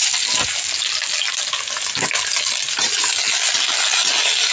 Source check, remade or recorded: recorded